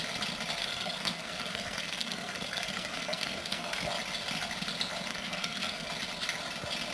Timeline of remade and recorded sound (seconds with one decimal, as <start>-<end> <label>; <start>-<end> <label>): 0.0-0.6 recorded; 0.6-3.9 remade; 3.9-5.1 recorded; 5.1-5.9 remade; 5.9-6.9 recorded